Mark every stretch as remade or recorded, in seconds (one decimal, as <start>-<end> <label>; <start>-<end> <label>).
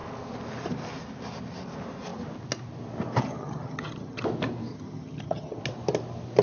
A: 0.0-3.2 recorded; 3.2-4.2 remade; 4.2-4.7 recorded; 4.7-5.6 remade; 5.6-6.4 recorded